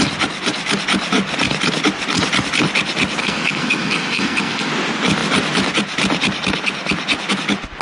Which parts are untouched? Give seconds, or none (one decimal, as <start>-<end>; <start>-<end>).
0.0-3.2; 4.7-7.8